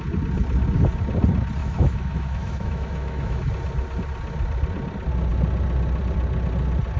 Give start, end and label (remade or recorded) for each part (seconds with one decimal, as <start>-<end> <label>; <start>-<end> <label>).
0.0-1.6 recorded; 1.6-3.4 remade; 3.4-7.0 recorded